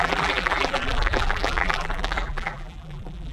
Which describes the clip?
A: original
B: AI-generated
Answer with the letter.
B